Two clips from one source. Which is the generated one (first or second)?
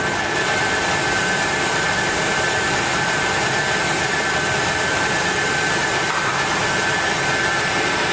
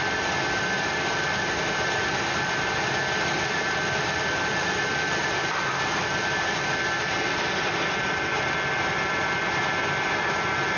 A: first